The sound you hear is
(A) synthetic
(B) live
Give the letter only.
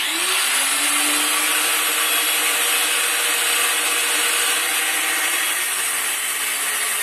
B